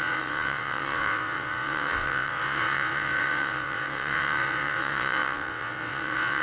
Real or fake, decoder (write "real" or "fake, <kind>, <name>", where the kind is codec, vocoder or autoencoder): fake, vocoder, WaveNeXt